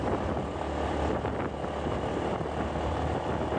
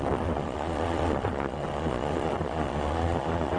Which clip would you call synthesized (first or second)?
second